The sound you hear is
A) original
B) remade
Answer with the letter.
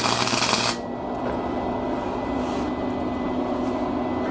A